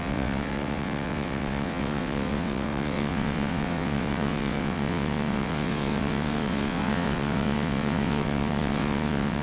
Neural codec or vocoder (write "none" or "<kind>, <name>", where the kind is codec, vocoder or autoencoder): vocoder, WaveNeXt